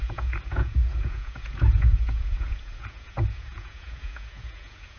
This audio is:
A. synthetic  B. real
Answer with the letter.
A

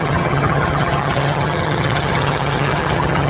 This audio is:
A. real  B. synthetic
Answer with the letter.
B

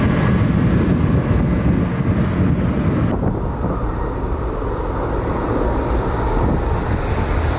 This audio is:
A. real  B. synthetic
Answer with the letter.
A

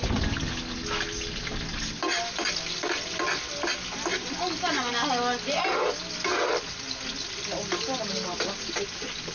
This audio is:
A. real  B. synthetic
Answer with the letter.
A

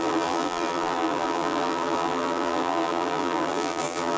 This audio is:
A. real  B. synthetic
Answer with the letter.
B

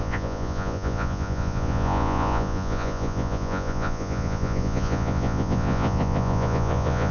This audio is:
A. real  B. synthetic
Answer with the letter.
B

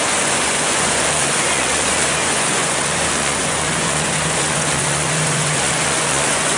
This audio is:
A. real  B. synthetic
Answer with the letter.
B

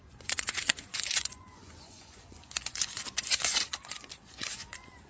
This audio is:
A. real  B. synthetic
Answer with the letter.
B